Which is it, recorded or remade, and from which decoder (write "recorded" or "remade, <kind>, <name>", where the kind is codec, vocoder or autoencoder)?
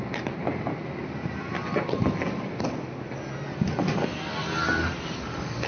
recorded